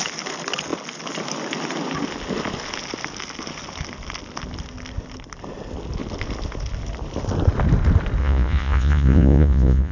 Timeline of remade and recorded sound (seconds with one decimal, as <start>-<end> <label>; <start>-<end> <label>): 0.0-8.2 recorded; 8.2-9.9 remade